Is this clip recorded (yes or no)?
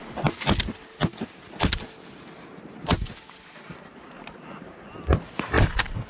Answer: yes